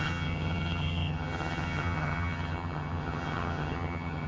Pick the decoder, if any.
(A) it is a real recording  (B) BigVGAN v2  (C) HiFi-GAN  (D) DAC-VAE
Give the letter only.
C